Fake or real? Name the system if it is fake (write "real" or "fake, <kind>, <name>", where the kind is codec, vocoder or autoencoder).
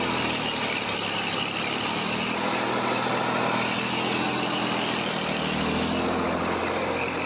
real